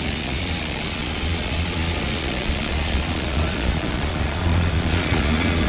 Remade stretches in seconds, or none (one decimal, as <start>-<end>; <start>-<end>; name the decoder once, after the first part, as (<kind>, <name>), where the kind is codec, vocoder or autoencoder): 0.0-5.7 (vocoder, Vocos)